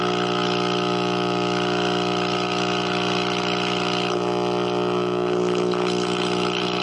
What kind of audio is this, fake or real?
real